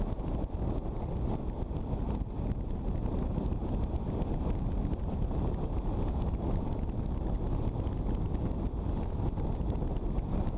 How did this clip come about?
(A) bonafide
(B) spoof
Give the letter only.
A